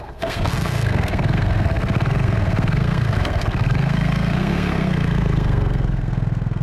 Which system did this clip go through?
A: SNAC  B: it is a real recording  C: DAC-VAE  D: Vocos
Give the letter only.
A